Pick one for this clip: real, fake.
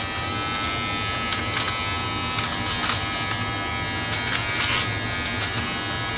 real